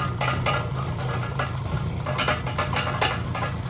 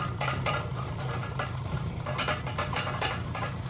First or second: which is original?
first